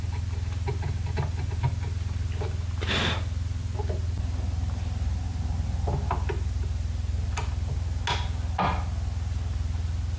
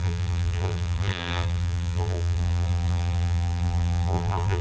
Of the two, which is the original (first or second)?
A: first